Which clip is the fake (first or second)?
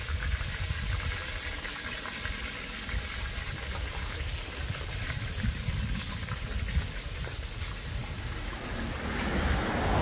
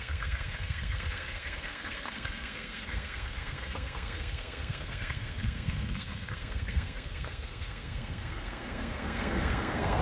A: second